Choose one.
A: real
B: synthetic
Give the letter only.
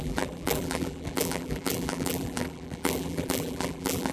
B